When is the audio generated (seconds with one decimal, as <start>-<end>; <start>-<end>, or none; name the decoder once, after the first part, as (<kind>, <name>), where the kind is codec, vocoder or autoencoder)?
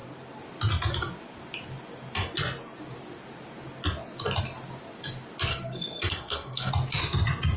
5.5-6.7 (codec, SNAC)